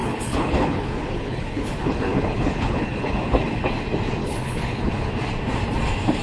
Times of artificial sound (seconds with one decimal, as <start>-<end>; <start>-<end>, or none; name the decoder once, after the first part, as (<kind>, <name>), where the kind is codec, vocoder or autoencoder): 0.0-3.7 (codec, HILCodec); 4.2-5.1